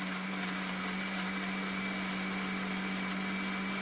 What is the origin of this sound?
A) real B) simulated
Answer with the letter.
A